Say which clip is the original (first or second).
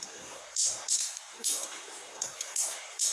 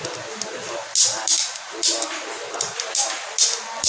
second